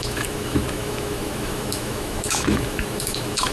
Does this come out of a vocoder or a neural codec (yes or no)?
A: yes